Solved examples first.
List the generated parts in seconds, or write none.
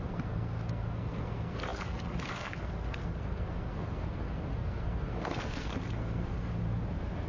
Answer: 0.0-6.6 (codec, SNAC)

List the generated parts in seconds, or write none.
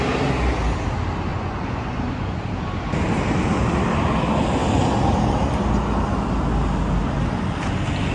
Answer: 1.3-2.4 (vocoder, Vocos)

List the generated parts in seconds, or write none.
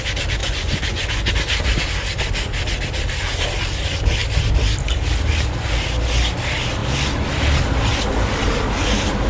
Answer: 0.4-1.3 (vocoder, Vocos)